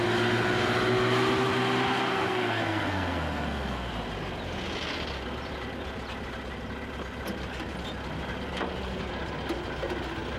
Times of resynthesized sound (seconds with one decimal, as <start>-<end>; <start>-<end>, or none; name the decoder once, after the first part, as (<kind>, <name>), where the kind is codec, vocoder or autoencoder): 2.1-3.9 (codec, SNAC)